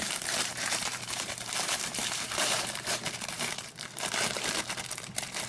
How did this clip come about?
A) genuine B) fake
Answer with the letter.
B